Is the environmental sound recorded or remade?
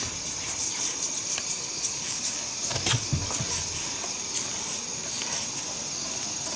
recorded